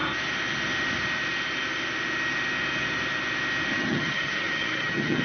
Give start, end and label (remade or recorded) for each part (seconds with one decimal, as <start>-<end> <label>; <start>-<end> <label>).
0.0-3.7 recorded; 3.7-5.2 remade